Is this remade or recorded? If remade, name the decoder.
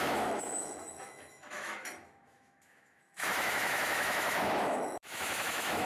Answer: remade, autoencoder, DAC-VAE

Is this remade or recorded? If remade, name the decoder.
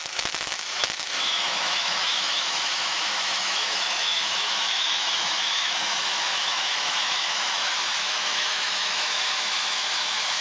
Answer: remade, autoencoder, DAC-VAE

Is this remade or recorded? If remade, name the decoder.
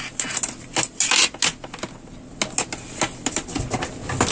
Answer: recorded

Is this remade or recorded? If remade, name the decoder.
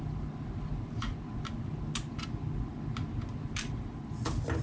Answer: recorded